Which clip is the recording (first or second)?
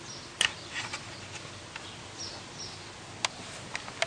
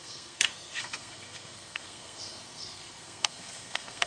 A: first